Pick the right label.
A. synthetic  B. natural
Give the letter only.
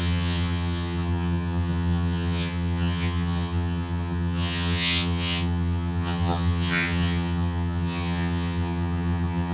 A